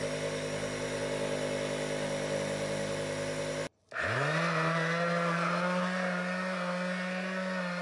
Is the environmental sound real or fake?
real